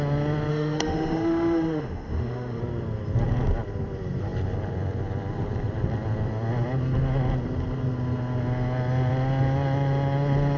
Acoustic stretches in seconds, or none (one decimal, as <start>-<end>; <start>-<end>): 0.0-0.5; 2.6-10.6